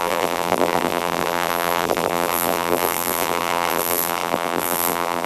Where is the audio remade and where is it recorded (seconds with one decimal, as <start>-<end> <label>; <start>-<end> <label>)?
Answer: 0.0-5.3 remade